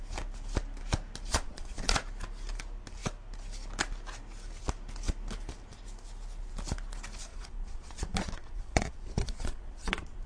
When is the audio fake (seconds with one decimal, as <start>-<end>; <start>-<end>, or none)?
1.3-2.0; 7.3-10.3